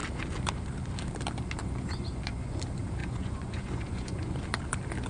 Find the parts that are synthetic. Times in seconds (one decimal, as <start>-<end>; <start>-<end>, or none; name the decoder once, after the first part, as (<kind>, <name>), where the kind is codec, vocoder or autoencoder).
1.6-2.6 (vocoder, Vocos); 3.0-4.4